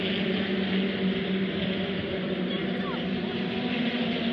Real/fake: real